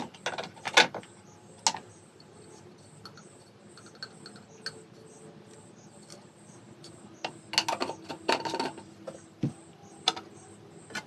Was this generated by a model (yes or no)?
no